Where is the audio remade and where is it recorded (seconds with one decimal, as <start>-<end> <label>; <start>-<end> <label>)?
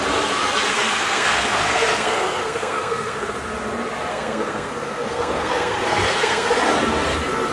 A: 0.0-0.7 recorded; 0.7-3.3 remade; 3.3-4.1 recorded; 4.1-6.5 remade; 6.5-7.5 recorded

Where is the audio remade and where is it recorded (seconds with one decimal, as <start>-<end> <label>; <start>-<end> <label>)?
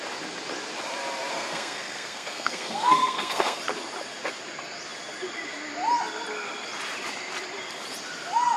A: 0.0-1.3 recorded; 1.3-3.6 remade; 3.6-8.6 recorded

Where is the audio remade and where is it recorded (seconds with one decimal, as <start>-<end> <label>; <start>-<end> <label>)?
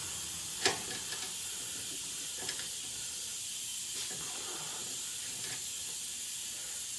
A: 0.0-7.0 recorded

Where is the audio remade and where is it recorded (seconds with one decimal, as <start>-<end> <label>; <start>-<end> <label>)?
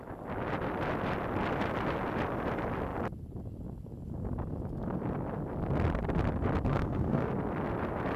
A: 0.0-6.7 recorded; 6.7-7.3 remade; 7.3-8.2 recorded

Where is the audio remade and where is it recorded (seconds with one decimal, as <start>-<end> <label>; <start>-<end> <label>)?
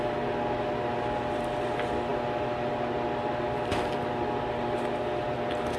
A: 0.0-5.8 recorded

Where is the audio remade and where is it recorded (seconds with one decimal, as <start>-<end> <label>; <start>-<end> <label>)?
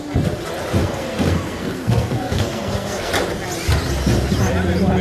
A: 0.0-0.8 recorded; 0.8-3.1 remade; 3.1-5.0 recorded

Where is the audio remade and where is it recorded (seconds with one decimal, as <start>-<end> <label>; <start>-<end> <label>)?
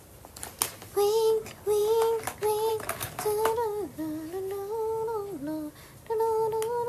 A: 0.0-6.9 recorded